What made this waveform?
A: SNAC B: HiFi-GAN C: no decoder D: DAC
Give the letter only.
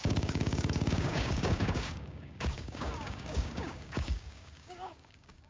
D